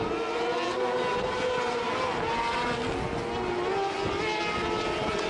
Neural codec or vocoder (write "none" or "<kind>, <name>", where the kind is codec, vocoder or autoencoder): none